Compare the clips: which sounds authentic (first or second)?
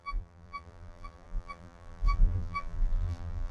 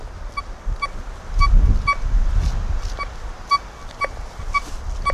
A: second